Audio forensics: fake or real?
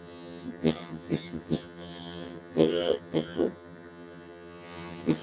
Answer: fake